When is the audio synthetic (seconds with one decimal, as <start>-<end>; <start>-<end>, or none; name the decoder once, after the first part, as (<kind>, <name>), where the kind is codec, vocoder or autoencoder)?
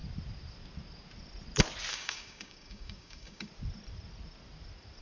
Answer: 1.9-3.5 (codec, DAC)